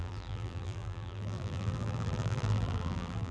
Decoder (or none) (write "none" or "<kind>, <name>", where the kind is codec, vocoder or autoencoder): vocoder, BigVGAN v2